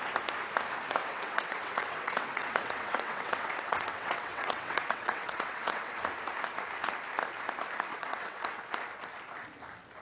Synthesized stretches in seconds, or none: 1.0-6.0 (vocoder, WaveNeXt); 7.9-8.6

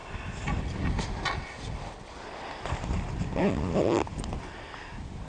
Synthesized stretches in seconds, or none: none

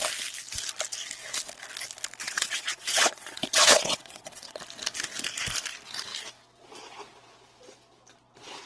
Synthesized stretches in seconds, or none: 2.2-4.6 (vocoder, WaveNeXt)

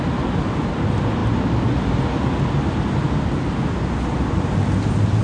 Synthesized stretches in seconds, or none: none

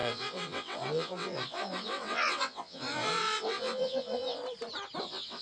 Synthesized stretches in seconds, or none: 0.0-4.4 (vocoder, WaveNeXt); 5.0-5.4

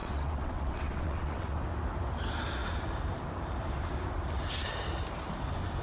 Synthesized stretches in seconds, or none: 0.0-1.6 (vocoder, WaveNeXt)